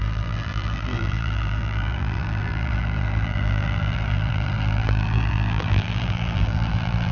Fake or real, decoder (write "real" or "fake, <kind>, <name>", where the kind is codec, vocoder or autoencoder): fake, vocoder, BigVGAN v2